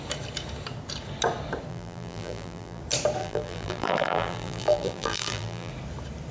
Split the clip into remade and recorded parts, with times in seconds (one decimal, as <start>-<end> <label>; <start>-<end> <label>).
0.0-1.7 recorded; 1.7-2.8 remade; 2.8-3.2 recorded; 3.2-5.7 remade; 5.7-6.3 recorded